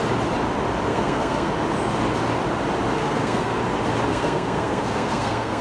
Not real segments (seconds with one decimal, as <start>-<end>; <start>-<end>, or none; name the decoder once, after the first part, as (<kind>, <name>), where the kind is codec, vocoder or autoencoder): 0.9-1.5 (codec, SNAC); 3.0-3.6; 4.1-5.6